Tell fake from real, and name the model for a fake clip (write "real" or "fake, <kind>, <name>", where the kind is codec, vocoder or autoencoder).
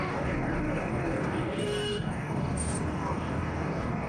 fake, codec, DAC